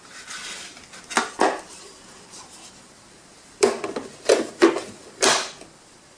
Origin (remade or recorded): recorded